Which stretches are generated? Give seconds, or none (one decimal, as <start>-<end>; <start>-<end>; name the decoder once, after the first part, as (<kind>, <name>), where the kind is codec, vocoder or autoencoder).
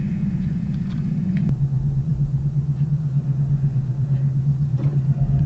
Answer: 0.0-5.5 (vocoder, Vocos)